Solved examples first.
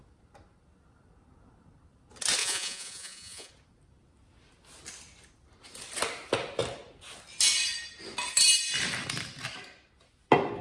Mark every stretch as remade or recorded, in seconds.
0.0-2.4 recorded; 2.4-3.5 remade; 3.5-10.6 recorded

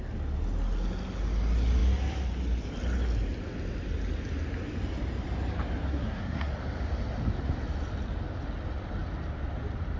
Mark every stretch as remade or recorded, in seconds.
0.0-5.9 recorded; 5.9-6.5 remade; 6.5-10.0 recorded

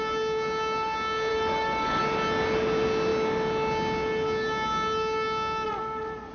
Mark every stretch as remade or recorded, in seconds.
0.0-1.3 recorded; 1.3-2.0 remade; 2.0-6.3 recorded

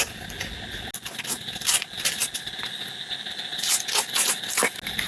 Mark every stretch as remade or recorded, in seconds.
0.0-5.1 recorded

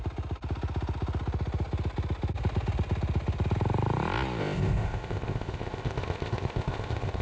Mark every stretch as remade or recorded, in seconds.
0.0-4.4 recorded; 4.4-7.2 remade

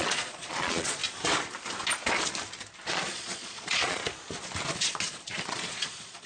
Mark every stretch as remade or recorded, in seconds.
0.0-1.0 remade; 1.0-2.9 recorded; 2.9-4.0 remade; 4.0-4.7 recorded; 4.7-6.3 remade

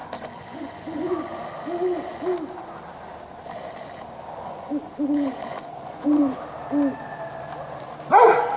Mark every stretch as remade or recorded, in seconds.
0.0-1.4 remade; 1.4-4.4 recorded; 4.4-6.4 remade; 6.4-8.6 recorded

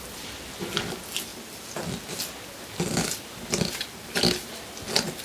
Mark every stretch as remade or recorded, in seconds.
0.0-5.2 recorded